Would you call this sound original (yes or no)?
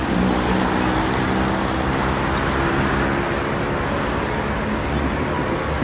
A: yes